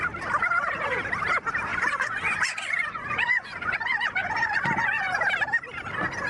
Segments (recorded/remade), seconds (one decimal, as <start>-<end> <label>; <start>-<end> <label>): 0.0-1.7 recorded; 1.7-5.2 remade; 5.2-6.3 recorded